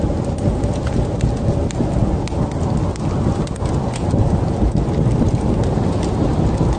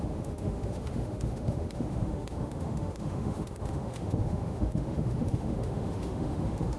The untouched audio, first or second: first